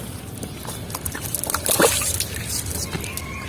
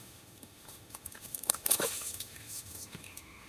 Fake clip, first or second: second